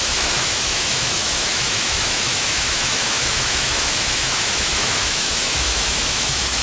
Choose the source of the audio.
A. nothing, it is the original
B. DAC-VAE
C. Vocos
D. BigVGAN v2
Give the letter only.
B